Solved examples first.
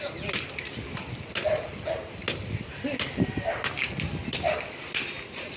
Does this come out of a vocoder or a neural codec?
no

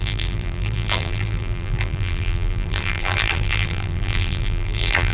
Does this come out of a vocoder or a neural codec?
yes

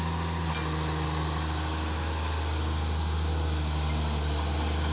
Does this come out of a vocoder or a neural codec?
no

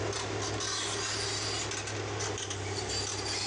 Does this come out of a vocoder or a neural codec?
no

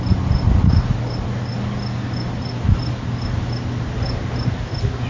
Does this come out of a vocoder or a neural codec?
no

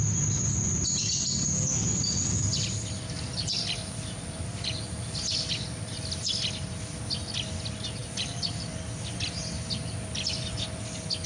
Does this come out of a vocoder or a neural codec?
no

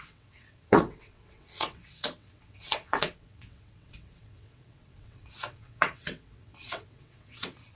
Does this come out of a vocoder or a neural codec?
yes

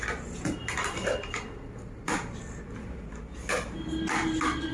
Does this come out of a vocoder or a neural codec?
no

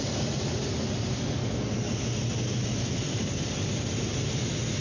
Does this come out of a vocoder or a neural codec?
no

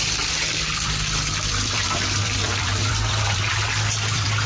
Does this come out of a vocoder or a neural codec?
yes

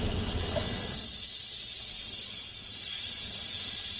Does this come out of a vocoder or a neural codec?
yes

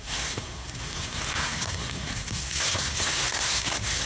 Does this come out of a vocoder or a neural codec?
yes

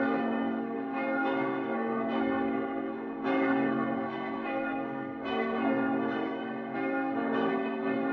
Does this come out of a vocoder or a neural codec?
yes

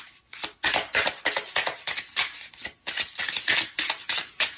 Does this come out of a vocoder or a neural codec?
no